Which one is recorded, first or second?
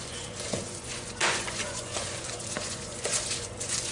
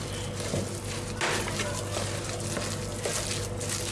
second